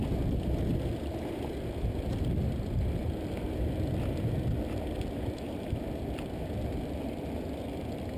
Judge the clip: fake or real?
real